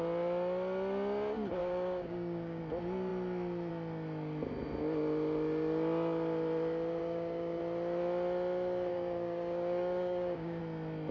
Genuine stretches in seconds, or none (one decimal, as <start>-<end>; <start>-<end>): 0.0-1.6; 2.6-7.0; 7.6-8.9; 10.6-11.1

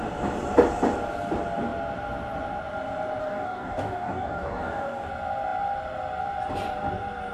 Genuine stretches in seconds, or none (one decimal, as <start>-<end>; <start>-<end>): 0.0-3.2; 5.1-7.3

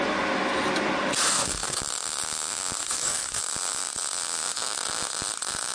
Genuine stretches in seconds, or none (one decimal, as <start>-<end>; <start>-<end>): 0.0-1.3; 1.8-2.8; 3.4-5.7

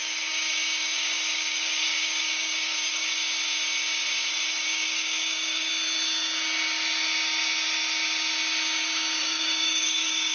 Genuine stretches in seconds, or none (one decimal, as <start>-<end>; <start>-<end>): 3.1-4.3; 5.7-9.2

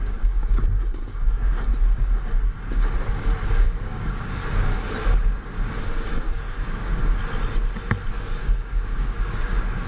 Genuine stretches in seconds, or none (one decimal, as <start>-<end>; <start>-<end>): 1.7-3.5; 4.4-5.8; 7.2-8.0

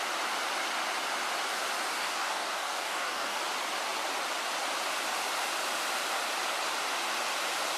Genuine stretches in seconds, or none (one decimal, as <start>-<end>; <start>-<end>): 0.0-2.0; 3.4-7.8

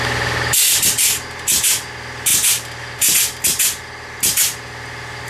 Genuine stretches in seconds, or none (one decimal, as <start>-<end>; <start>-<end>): 0.0-5.3

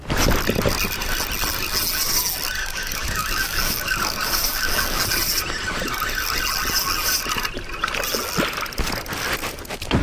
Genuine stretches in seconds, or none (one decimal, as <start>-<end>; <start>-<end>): 0.0-2.6; 5.0-10.0